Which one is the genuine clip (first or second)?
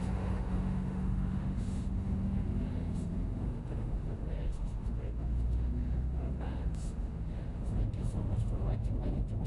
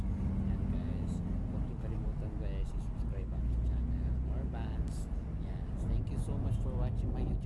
second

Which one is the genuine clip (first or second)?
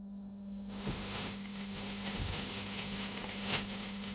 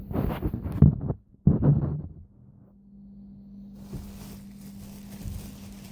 second